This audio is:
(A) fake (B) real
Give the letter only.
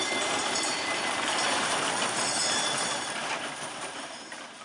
A